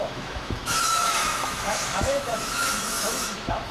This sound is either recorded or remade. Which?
remade